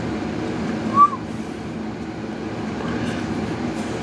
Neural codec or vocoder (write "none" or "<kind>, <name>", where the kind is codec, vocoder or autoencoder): none